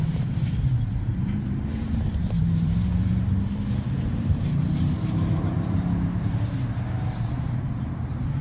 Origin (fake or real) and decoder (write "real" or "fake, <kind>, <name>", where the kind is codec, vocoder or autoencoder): fake, vocoder, BigVGAN v2